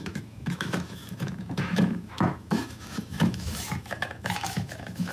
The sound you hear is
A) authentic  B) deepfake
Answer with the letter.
B